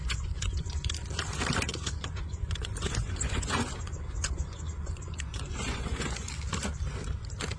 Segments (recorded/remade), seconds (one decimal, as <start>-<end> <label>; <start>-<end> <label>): 0.0-0.9 remade; 0.9-1.7 recorded; 1.7-6.3 remade; 6.3-7.6 recorded